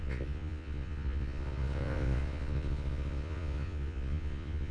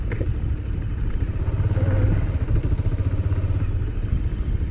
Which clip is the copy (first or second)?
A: first